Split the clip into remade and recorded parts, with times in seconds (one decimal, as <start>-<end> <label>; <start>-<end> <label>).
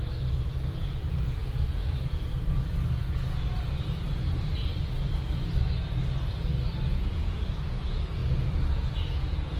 0.0-4.7 remade; 4.7-6.9 recorded; 6.9-9.6 remade